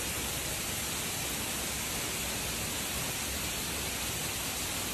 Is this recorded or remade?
recorded